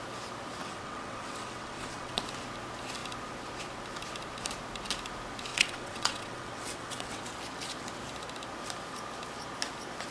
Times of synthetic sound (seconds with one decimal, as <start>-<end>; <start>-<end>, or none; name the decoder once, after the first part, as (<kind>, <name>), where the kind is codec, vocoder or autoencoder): 0.6-2.2 (vocoder, WaveNeXt); 5.5-7.2